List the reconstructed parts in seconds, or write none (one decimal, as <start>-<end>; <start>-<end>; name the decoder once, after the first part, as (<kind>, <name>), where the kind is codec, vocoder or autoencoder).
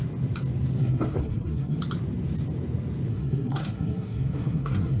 0.8-1.8 (codec, SNAC); 3.1-5.0